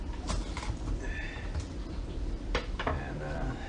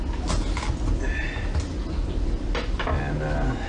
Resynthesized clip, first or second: first